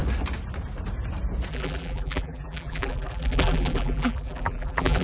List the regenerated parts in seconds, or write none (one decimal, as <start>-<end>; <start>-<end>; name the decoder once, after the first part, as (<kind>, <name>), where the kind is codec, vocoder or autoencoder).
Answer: 1.5-5.0 (vocoder, BigVGAN v2)